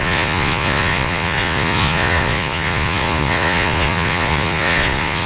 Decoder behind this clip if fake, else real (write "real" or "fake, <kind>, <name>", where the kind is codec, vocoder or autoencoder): fake, vocoder, Vocos